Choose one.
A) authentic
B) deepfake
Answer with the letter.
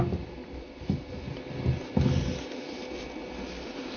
A